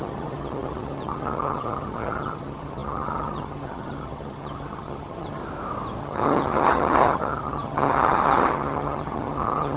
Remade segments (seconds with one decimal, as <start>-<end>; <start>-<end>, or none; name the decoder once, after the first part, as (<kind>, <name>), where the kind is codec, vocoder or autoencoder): 0.0-5.4 (vocoder, HiFi-GAN); 6.0-9.8

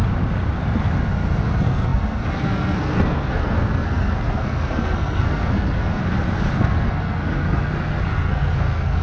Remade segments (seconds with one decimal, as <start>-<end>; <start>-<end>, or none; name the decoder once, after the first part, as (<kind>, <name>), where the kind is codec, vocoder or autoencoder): 1.4-6.0 (codec, SNAC); 6.6-9.0

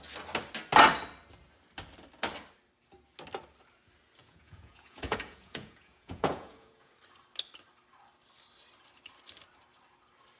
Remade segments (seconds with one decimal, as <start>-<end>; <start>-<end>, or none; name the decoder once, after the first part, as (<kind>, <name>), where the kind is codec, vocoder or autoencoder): 4.2-6.9 (vocoder, Vocos)

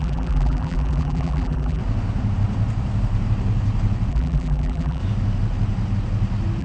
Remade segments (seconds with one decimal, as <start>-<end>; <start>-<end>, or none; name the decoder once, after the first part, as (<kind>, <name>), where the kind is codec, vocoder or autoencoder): 0.0-1.8 (vocoder, BigVGAN v2); 4.1-5.0

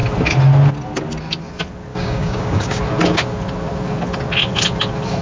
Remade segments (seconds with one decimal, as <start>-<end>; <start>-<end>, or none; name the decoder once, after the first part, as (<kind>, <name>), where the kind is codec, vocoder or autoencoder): 1.9-2.8 (codec, DAC)

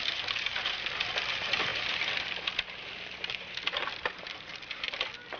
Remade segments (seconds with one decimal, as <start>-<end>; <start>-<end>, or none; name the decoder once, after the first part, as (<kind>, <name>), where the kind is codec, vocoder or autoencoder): none